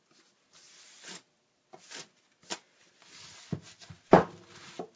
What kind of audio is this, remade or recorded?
recorded